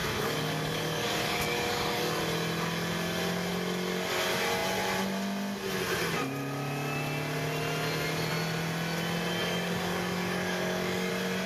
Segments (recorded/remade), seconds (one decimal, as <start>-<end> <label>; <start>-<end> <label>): 0.0-2.2 remade; 2.2-9.4 recorded; 9.4-11.1 remade; 11.1-11.5 recorded